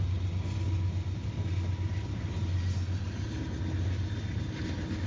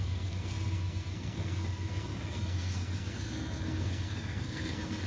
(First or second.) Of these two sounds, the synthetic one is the second